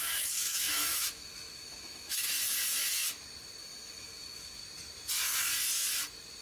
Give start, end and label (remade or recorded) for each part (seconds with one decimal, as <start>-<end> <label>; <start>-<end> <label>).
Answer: 0.0-2.3 remade; 2.3-3.6 recorded; 3.6-4.6 remade; 4.6-6.4 recorded